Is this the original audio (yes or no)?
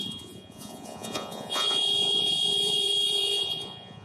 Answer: no